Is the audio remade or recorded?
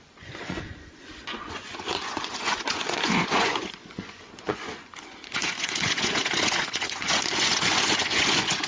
remade